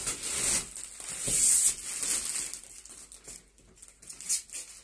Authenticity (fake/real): real